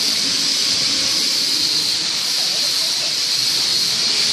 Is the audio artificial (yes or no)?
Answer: no